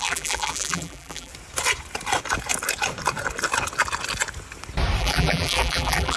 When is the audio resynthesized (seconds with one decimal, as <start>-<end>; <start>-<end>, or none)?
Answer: 0.0-1.3; 5.0-6.2